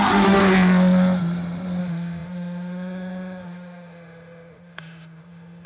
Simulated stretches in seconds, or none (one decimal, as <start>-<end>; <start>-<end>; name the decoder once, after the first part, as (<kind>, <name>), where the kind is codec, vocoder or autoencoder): 0.0-0.4 (autoencoder, DAC-VAE); 1.8-5.7